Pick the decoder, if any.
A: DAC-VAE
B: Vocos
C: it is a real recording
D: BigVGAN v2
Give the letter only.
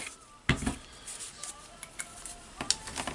C